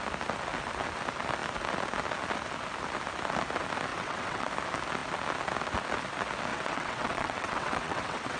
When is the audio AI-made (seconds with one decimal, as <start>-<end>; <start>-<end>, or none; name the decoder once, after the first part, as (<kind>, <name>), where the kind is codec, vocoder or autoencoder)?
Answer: 3.9-4.5 (vocoder, WaveNeXt); 6.5-8.4